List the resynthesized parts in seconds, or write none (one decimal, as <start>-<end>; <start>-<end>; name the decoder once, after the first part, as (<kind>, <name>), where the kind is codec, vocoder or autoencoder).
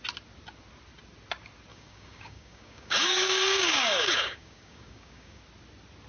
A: 1.7-5.4 (codec, DAC)